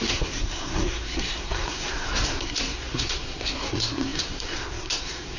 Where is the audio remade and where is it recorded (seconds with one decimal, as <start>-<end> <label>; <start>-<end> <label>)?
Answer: 0.0-5.4 remade